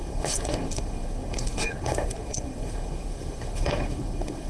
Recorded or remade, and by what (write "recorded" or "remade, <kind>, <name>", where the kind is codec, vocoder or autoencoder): remade, codec, SNAC